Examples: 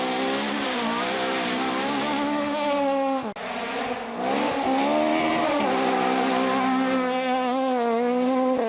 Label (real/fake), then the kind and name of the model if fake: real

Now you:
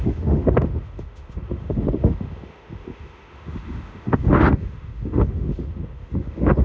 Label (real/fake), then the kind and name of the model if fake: fake, autoencoder, DAC-VAE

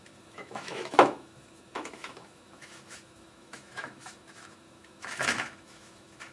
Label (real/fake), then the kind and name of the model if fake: fake, autoencoder, DAC-VAE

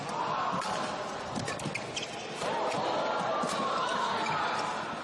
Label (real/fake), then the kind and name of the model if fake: real